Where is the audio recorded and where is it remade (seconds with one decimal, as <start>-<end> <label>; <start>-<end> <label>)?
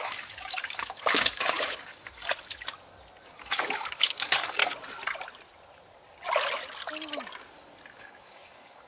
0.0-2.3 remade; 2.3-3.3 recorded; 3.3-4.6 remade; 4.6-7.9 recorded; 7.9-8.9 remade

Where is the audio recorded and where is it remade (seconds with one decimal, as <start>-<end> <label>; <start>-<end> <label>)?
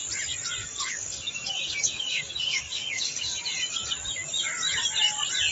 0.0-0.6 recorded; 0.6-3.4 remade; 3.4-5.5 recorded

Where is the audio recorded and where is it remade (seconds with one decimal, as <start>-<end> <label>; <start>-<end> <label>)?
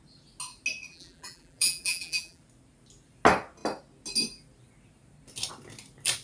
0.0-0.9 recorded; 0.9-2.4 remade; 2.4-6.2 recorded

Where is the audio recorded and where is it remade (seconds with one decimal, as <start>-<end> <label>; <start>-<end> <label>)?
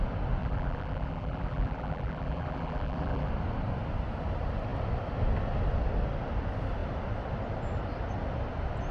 0.0-0.4 recorded; 0.4-3.3 remade; 3.3-8.9 recorded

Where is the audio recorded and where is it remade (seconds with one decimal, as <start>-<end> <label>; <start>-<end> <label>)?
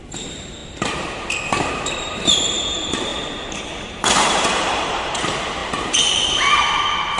0.0-0.6 remade; 0.6-1.8 recorded; 1.8-3.1 remade; 3.1-3.8 recorded; 3.8-7.2 remade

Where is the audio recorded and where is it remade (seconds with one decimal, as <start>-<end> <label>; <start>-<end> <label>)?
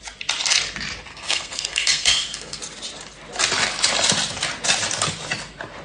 0.0-1.1 recorded; 1.1-2.6 remade; 2.6-5.8 recorded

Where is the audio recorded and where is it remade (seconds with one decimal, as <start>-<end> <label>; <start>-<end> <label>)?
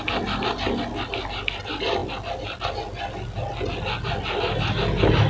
0.0-5.3 recorded